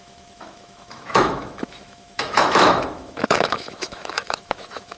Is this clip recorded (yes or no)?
no